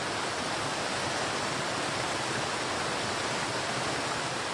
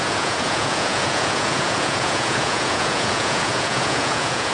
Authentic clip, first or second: first